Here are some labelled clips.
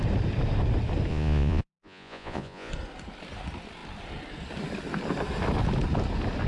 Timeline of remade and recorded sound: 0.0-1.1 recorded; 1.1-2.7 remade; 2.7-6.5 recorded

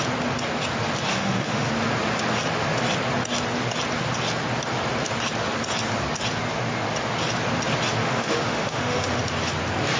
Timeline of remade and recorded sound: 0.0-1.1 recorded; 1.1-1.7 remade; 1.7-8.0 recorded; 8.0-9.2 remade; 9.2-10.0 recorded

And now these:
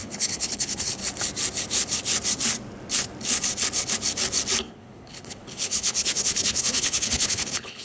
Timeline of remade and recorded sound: 0.0-1.0 remade; 1.0-4.7 recorded; 4.7-7.8 remade

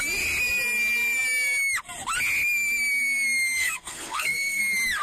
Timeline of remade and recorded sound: 0.0-3.6 recorded; 3.6-4.6 remade; 4.6-5.0 recorded

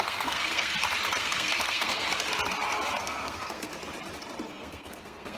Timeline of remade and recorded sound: 0.0-0.7 remade; 0.7-1.2 recorded; 1.2-2.1 remade; 2.1-3.0 recorded; 3.0-3.7 remade; 3.7-4.5 recorded; 4.5-5.4 remade

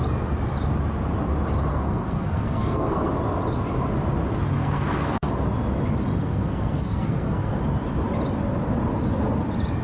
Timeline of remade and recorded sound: 0.0-1.7 recorded; 1.7-3.2 remade; 3.2-4.6 recorded; 4.6-5.3 remade; 5.3-6.2 recorded; 6.2-7.6 remade; 7.6-9.8 recorded

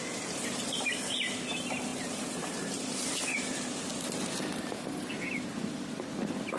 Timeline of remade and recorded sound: 0.0-3.9 remade; 3.9-6.6 recorded